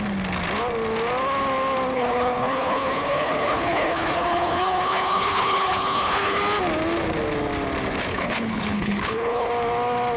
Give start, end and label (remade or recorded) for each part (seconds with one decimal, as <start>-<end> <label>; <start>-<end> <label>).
0.0-1.9 recorded; 1.9-6.4 remade; 6.4-8.1 recorded; 8.1-9.5 remade; 9.5-10.2 recorded